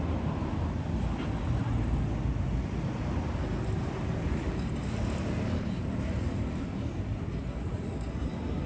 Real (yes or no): yes